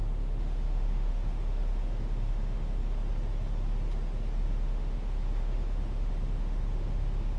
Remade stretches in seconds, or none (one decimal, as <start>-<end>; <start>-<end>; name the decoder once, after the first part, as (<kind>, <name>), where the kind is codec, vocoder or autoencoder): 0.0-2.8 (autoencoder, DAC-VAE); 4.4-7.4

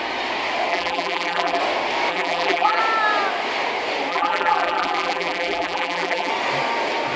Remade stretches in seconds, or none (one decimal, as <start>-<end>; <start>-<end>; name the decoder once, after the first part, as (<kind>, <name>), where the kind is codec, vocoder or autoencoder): 0.7-1.6 (vocoder, BigVGAN v2); 2.1-2.8; 4.1-6.3

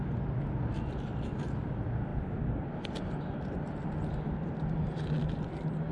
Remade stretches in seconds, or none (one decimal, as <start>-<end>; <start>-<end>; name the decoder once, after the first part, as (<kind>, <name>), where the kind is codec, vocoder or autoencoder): none

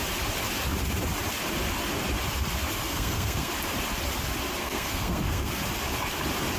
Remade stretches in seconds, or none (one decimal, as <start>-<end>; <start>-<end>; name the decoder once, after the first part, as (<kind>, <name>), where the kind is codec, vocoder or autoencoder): 2.8-3.5 (codec, SNAC); 4.6-5.5

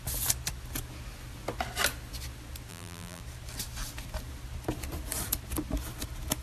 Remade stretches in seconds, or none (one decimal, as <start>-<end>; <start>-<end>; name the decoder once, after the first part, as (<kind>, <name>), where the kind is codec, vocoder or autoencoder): 2.7-3.2 (vocoder, BigVGAN v2)

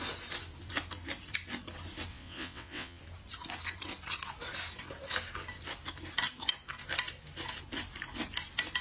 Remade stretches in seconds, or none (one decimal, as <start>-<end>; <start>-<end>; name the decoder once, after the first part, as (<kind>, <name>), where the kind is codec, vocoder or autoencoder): 2.1-3.0 (vocoder, WaveNeXt)

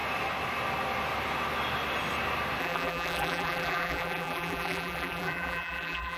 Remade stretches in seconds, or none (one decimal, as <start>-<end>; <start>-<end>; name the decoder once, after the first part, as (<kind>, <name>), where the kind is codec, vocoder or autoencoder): 2.6-6.2 (vocoder, BigVGAN v2)

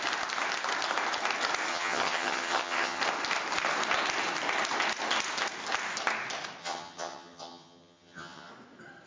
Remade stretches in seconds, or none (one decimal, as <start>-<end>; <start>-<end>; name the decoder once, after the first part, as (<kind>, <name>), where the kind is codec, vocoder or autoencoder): 1.7-3.0 (vocoder, HiFi-GAN); 6.6-8.5